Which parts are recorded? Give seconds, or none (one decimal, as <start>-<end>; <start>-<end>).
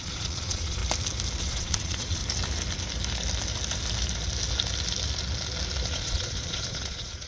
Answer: 0.8-1.4; 2.2-5.9